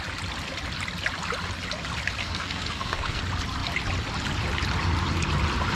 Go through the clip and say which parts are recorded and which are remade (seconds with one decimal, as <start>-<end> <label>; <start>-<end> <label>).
0.0-2.2 recorded; 2.2-3.2 remade; 3.2-5.7 recorded